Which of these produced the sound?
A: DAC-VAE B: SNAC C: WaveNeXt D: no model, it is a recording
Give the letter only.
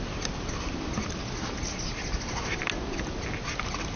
D